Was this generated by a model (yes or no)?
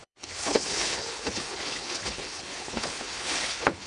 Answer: yes